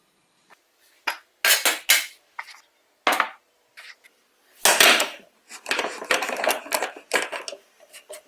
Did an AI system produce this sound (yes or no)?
no